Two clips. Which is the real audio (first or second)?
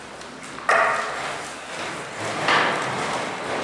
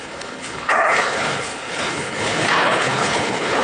first